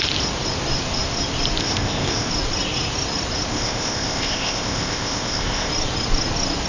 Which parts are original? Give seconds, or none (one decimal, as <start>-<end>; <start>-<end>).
0.0-1.6; 2.3-3.5; 5.7-6.7